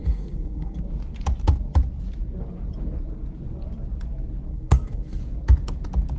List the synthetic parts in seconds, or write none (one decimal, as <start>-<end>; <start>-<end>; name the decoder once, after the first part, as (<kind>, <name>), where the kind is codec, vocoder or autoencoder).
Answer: 0.0-0.8 (codec, SNAC); 4.5-5.2